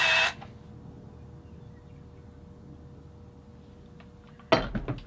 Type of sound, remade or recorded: recorded